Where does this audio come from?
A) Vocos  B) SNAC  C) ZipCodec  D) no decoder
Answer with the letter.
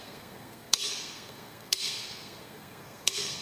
B